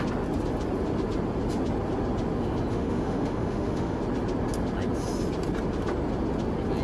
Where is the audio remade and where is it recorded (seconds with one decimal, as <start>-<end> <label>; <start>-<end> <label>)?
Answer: 0.0-2.7 recorded; 2.7-4.0 remade; 4.0-6.8 recorded

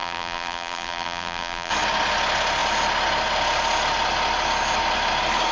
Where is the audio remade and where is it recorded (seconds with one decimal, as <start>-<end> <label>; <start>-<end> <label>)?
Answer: 0.0-1.7 remade; 1.7-5.5 recorded

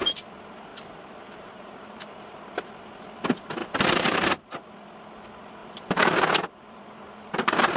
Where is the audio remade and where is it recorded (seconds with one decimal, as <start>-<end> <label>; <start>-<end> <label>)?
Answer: 0.0-0.7 recorded; 0.7-2.5 remade; 2.5-3.6 recorded; 3.6-4.3 remade; 4.3-5.6 recorded; 5.6-7.1 remade; 7.1-7.8 recorded

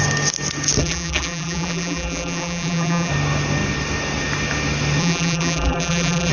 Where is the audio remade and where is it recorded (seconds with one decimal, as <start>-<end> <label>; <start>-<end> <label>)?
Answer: 0.0-0.8 recorded; 0.8-3.1 remade; 3.1-5.0 recorded; 5.0-6.3 remade

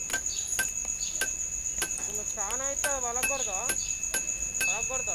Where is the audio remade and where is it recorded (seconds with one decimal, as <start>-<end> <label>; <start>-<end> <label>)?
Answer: 0.0-5.1 recorded